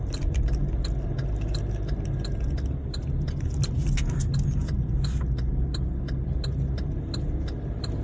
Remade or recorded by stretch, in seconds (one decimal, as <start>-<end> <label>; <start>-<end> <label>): 0.0-8.0 recorded